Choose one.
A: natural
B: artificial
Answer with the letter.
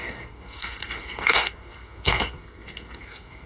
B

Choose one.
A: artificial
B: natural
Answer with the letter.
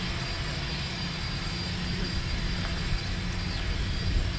B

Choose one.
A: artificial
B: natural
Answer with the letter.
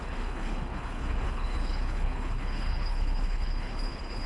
A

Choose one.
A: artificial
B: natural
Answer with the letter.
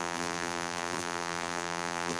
A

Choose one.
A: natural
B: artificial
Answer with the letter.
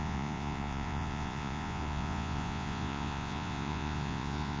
B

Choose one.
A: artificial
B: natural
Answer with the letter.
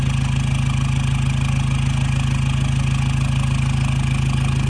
B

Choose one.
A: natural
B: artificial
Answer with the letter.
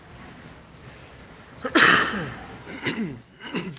A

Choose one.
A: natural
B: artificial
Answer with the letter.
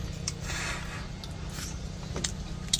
A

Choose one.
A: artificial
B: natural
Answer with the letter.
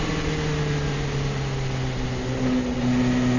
B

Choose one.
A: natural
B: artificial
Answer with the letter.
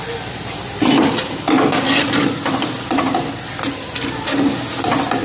A